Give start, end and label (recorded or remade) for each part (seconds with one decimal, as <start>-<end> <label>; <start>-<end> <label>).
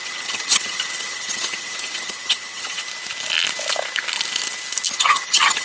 0.0-2.9 remade; 2.9-4.9 recorded; 4.9-5.6 remade